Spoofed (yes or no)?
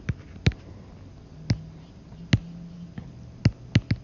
no